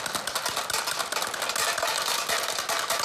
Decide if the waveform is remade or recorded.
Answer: recorded